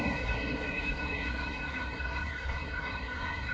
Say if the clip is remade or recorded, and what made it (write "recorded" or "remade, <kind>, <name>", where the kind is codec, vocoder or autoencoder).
remade, codec, SNAC